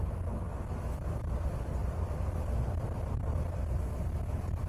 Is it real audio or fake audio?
real